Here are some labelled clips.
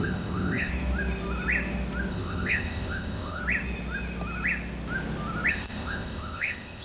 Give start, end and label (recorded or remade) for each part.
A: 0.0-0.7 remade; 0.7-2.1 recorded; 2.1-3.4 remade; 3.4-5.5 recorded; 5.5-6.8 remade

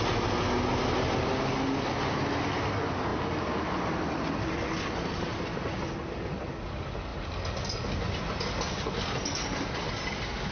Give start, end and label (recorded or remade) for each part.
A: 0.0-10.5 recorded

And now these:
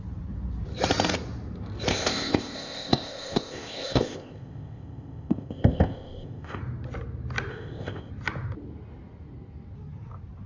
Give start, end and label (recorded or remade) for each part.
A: 0.0-1.9 recorded; 1.9-6.6 remade; 6.6-7.5 recorded; 7.5-8.1 remade; 8.1-10.5 recorded

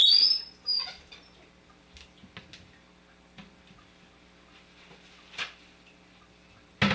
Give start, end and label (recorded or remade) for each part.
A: 0.0-6.9 recorded

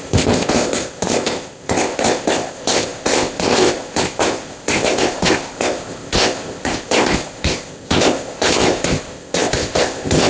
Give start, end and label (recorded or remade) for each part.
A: 0.0-10.3 remade

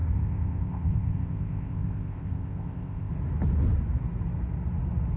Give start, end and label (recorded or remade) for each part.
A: 0.0-3.1 remade; 3.1-5.2 recorded